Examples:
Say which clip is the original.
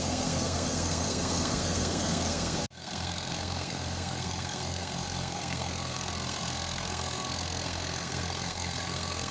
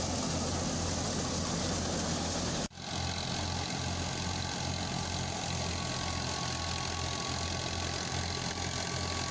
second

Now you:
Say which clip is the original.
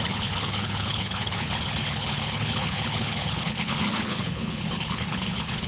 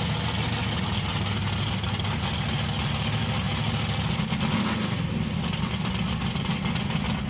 second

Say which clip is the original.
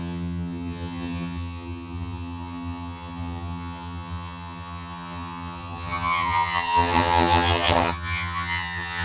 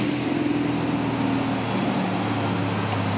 second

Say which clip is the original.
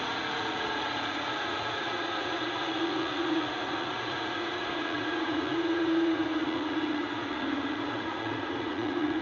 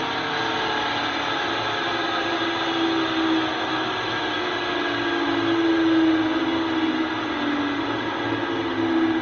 second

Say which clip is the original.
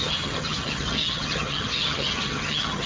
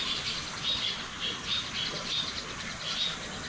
second